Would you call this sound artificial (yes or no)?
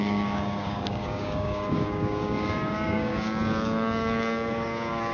yes